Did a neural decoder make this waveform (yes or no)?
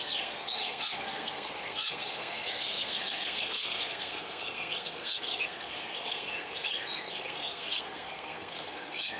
yes